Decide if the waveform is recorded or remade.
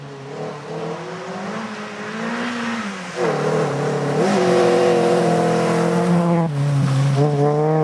recorded